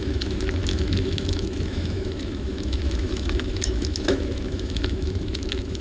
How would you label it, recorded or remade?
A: remade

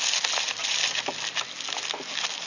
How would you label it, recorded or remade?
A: recorded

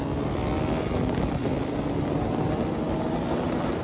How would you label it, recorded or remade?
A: recorded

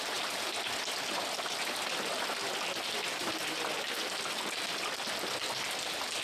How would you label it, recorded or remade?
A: recorded